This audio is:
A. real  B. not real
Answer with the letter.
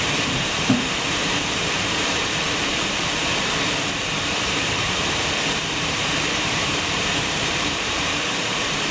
B